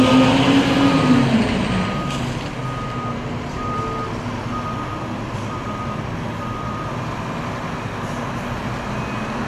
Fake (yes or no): no